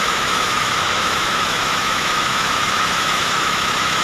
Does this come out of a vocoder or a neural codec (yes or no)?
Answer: yes